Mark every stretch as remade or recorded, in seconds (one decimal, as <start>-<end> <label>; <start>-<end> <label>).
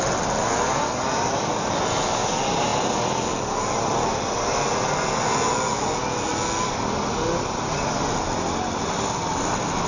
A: 0.0-9.9 recorded